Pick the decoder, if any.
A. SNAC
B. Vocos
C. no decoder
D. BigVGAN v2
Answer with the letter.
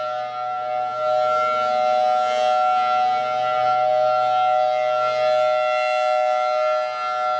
C